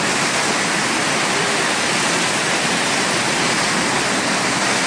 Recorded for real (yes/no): yes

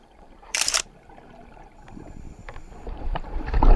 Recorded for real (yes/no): no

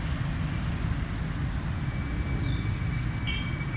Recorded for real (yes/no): yes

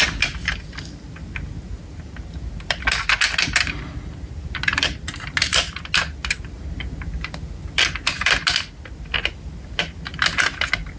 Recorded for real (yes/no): yes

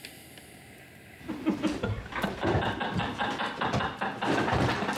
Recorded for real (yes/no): yes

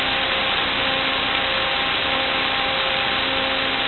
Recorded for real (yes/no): yes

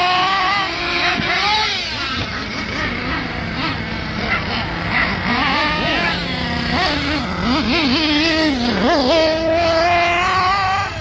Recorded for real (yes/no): yes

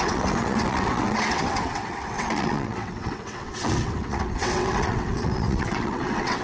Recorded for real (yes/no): no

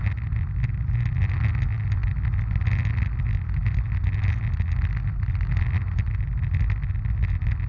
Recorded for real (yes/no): yes